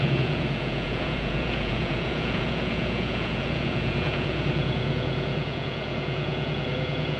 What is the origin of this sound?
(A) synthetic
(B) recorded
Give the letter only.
A